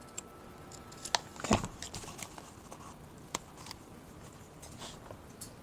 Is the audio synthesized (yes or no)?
no